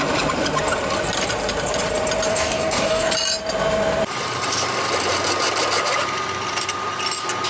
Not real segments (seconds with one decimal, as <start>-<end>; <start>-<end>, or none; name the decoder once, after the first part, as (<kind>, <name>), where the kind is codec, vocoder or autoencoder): 2.3-3.1 (codec, DAC)